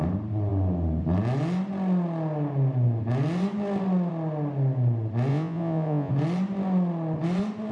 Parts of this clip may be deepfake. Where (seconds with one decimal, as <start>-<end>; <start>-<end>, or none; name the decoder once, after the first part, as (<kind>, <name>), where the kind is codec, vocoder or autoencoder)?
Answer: 5.3-6.1 (vocoder, Vocos)